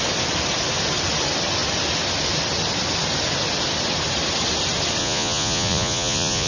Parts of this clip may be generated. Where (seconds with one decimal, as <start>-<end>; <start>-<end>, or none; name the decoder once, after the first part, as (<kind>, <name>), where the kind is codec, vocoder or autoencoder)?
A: 5.0-6.5 (vocoder, Vocos)